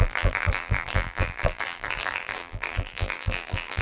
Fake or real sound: fake